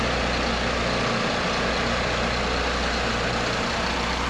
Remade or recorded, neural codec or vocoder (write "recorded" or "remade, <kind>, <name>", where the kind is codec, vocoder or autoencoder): recorded